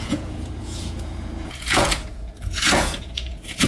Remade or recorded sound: remade